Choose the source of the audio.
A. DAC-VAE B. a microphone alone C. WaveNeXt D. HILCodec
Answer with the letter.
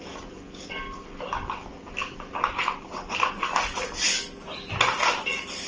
B